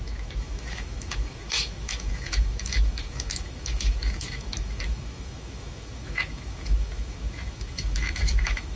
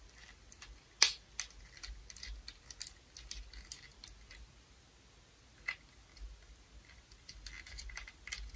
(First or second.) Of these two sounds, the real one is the second